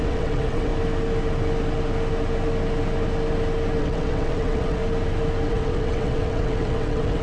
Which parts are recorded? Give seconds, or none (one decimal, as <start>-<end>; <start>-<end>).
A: 0.7-3.8; 4.8-5.5